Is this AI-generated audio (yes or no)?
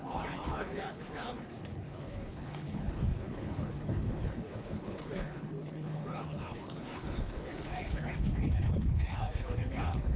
yes